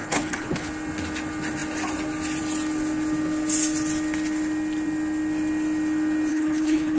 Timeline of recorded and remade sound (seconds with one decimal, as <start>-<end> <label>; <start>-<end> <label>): 0.0-0.7 remade; 0.7-6.3 recorded; 6.3-7.0 remade